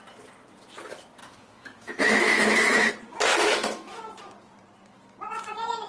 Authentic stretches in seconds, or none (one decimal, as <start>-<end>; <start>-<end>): 0.0-1.2; 2.9-3.3; 3.9-5.9

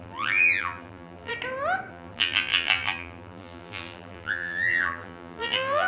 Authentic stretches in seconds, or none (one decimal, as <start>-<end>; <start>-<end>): 1.3-1.9

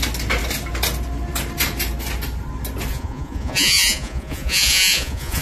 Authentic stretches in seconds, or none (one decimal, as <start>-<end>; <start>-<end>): 0.0-2.9

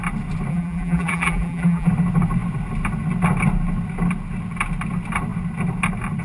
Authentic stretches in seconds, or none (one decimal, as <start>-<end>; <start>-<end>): 0.0-0.5; 1.9-6.2

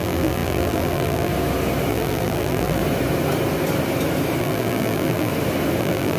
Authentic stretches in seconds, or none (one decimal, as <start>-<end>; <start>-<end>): 1.3-1.9; 2.8-4.4; 5.3-5.8